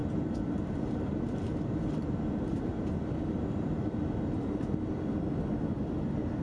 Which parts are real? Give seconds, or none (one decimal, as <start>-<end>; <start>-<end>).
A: 3.1-6.4